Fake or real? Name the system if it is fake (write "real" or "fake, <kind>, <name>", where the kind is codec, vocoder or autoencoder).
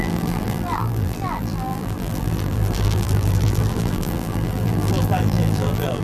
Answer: fake, vocoder, BigVGAN v2